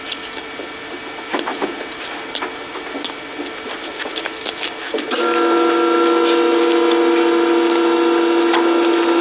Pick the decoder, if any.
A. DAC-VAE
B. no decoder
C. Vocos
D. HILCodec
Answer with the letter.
B